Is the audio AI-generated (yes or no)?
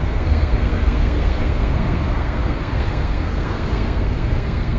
yes